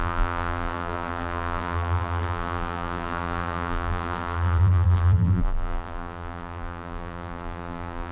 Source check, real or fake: fake